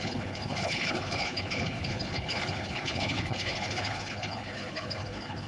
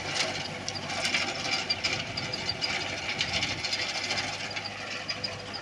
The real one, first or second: second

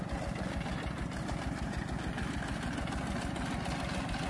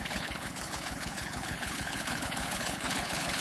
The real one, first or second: first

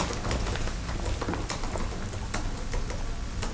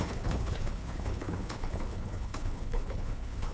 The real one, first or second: first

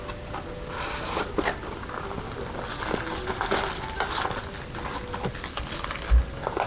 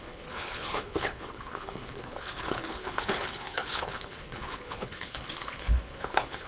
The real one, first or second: first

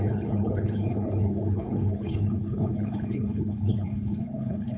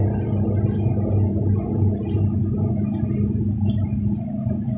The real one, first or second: second